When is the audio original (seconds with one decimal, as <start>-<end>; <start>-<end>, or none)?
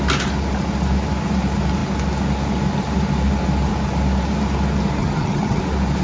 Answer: 0.0-5.0; 5.6-6.0